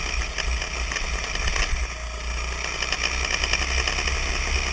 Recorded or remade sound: recorded